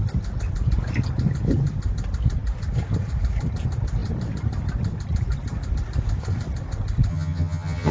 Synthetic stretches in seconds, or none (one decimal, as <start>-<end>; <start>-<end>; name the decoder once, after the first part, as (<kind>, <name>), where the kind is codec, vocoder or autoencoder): 7.1-7.9 (vocoder, HiFi-GAN)

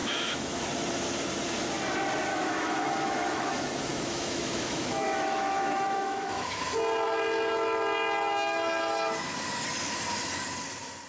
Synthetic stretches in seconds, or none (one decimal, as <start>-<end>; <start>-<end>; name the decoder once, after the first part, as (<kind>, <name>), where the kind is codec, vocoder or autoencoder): 0.0-0.6 (autoencoder, DAC-VAE); 2.3-3.5; 3.9-6.6

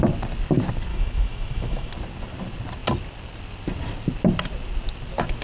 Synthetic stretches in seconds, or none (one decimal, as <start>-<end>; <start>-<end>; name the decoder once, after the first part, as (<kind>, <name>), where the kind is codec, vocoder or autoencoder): 0.9-1.9 (autoencoder, DAC-VAE)